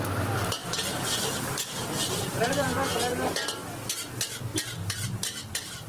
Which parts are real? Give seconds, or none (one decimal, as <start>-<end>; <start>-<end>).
0.0-0.6; 2.9-4.5; 5.5-5.9